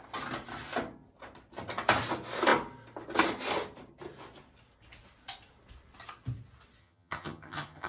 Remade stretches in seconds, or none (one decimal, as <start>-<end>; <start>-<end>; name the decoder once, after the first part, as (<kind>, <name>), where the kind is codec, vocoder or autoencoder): 6.8-7.9 (vocoder, HiFi-GAN)